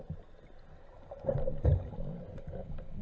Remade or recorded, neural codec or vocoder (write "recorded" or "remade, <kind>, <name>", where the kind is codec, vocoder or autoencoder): recorded